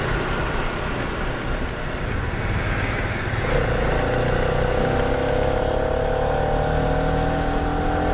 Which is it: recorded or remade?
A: recorded